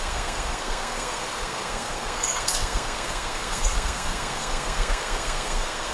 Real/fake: fake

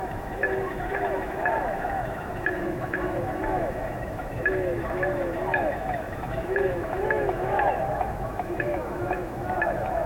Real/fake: fake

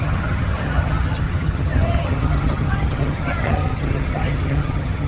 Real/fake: fake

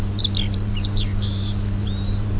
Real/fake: fake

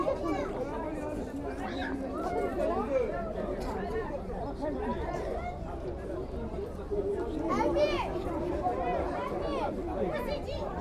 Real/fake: fake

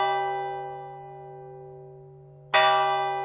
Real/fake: real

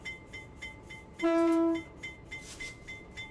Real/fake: fake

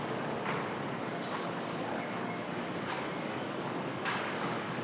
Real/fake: fake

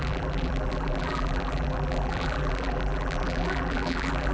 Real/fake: fake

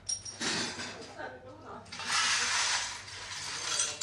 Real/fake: real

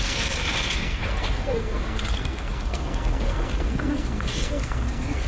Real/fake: fake